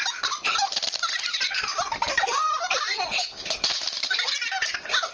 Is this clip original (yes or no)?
yes